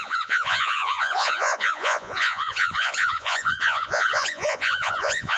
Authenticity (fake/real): fake